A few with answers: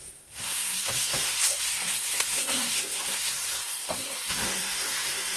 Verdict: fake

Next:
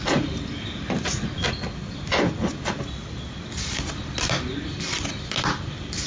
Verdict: real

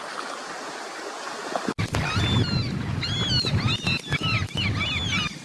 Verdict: real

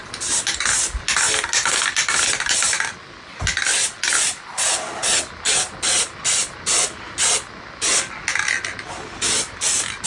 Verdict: real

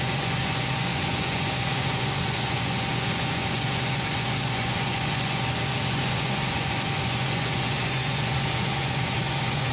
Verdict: fake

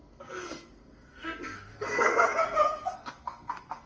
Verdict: fake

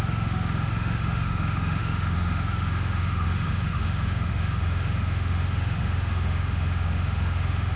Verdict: fake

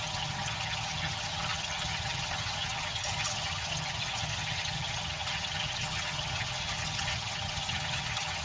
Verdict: fake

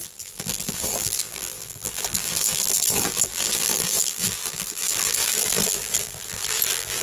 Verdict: fake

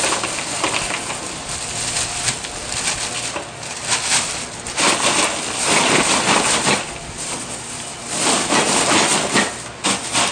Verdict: real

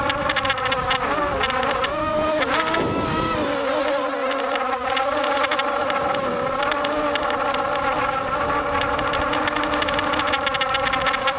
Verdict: real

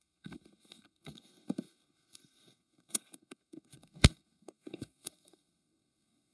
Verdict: fake